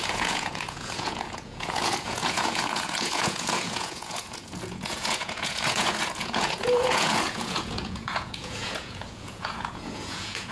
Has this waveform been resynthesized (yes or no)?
yes